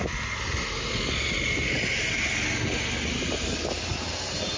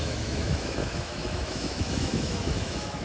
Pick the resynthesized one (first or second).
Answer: second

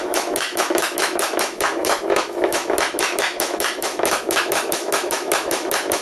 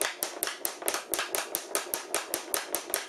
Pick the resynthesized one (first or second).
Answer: first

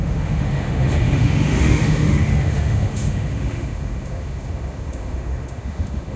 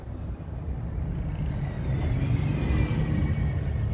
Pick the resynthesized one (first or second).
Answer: first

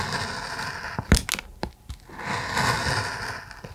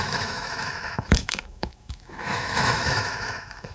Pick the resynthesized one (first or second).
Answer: second